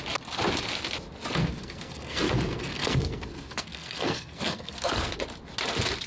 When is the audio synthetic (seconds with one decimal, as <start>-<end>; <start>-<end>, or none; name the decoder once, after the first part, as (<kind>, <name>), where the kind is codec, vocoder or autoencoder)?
1.4-5.1 (codec, SNAC)